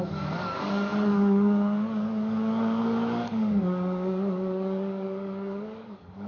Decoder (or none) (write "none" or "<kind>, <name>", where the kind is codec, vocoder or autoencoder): codec, DAC